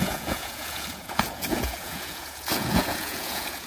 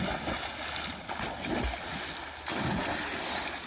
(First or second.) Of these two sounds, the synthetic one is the first